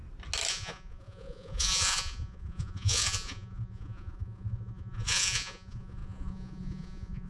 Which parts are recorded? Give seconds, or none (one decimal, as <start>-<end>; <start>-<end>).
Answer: 0.0-0.5